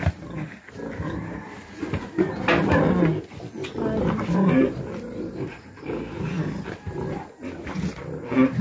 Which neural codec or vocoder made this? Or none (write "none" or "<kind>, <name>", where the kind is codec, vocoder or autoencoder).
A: none